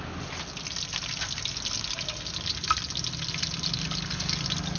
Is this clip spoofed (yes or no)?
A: no